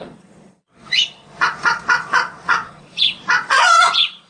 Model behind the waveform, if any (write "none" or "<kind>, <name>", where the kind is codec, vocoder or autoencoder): vocoder, Vocos